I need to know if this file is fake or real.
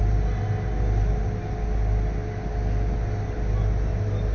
real